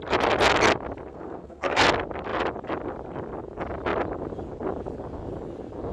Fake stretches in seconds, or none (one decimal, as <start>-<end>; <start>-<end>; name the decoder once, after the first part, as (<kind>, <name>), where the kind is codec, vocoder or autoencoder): 1.1-1.8 (codec, SNAC)